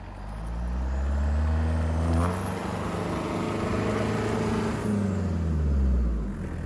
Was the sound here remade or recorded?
recorded